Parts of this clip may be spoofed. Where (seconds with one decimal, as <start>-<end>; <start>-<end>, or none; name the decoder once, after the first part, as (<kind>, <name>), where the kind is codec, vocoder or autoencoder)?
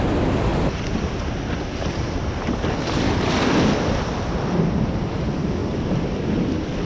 none